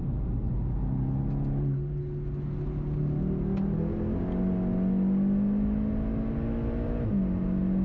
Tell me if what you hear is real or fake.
real